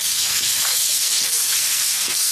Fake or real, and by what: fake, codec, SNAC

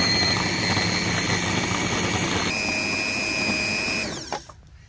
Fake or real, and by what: real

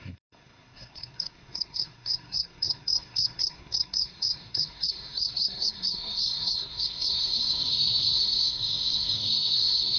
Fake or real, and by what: fake, codec, SNAC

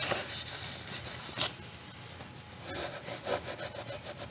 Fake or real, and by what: real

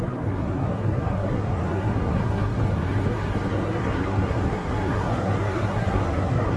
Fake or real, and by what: fake, codec, SNAC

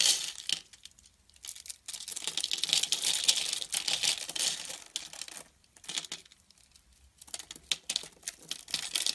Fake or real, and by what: real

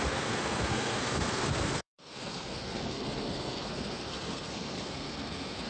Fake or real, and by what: fake, codec, SNAC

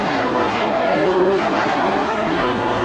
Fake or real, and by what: fake, codec, SNAC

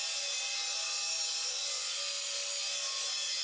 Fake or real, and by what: real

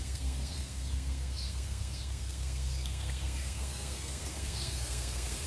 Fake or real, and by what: fake, codec, SNAC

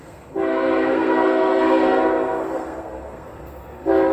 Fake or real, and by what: fake, codec, SNAC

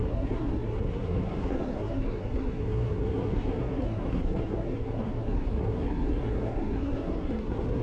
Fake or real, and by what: fake, codec, SNAC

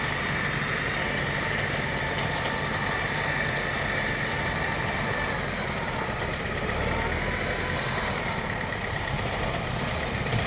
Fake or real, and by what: real